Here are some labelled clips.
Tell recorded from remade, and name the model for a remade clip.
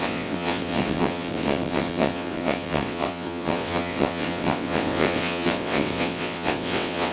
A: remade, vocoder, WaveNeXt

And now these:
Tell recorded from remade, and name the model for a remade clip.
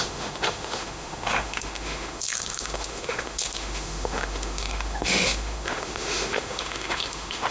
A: remade, autoencoder, DAC-VAE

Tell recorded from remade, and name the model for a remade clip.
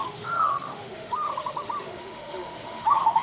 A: remade, autoencoder, DAC-VAE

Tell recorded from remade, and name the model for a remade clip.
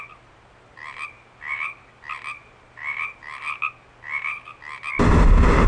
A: recorded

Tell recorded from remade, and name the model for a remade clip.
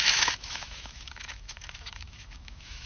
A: remade, autoencoder, DAC-VAE